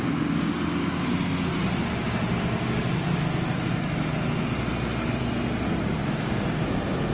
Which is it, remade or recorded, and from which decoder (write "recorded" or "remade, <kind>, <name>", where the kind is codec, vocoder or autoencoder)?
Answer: recorded